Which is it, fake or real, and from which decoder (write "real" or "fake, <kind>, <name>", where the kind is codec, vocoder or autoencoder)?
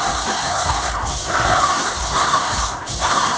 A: fake, codec, SNAC